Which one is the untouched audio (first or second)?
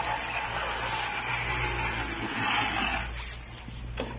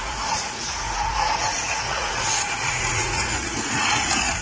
first